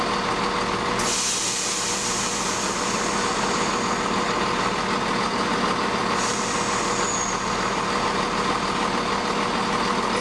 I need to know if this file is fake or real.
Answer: real